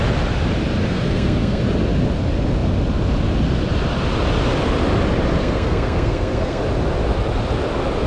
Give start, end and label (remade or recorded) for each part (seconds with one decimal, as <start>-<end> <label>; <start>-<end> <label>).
0.0-0.9 recorded; 0.9-1.6 remade; 1.6-5.4 recorded; 5.4-6.6 remade; 6.6-8.1 recorded